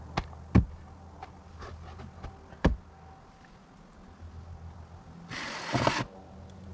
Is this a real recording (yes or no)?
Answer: yes